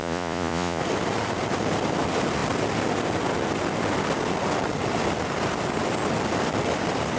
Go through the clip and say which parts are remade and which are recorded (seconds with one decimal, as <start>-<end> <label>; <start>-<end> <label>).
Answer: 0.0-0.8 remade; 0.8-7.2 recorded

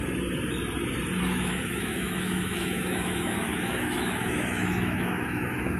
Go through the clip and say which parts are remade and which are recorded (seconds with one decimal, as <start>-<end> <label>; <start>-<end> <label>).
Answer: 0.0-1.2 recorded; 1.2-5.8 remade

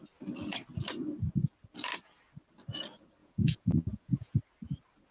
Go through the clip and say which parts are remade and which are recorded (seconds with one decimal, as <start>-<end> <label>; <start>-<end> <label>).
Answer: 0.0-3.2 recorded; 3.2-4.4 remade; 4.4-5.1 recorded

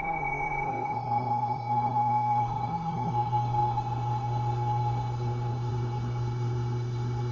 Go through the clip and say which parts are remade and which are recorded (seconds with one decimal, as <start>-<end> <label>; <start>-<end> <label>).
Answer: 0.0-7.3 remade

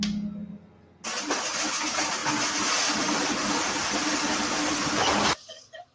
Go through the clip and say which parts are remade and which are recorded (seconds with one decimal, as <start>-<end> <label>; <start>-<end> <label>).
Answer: 0.0-5.9 recorded

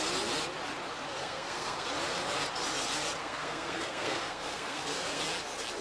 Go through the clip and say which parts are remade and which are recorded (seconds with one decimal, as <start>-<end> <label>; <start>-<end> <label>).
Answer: 0.0-1.2 recorded; 1.2-1.9 remade; 1.9-3.2 recorded; 3.2-5.2 remade; 5.2-5.8 recorded